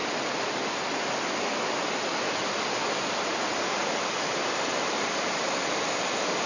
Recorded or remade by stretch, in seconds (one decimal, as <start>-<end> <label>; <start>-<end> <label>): 0.0-6.5 recorded